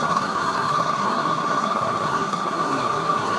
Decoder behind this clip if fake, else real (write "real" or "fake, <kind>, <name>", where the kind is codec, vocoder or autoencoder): fake, codec, SNAC